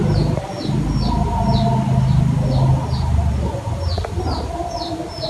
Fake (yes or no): no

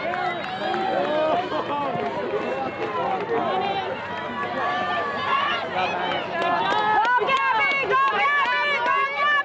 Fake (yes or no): no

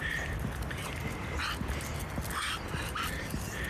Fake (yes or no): no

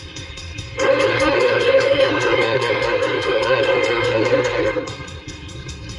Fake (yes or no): yes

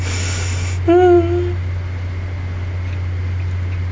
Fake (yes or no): no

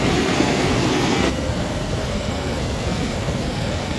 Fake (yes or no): yes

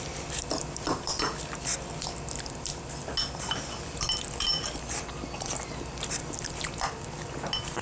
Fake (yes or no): no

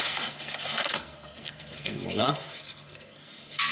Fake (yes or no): yes